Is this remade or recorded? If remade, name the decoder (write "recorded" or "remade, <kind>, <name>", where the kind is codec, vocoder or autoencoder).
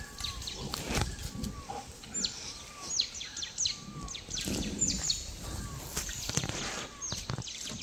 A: recorded